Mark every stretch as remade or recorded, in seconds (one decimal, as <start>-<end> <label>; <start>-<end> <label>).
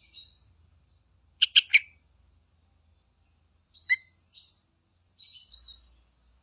0.0-6.4 recorded